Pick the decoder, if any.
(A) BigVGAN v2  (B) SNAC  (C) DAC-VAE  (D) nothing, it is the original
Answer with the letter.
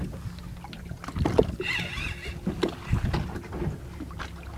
D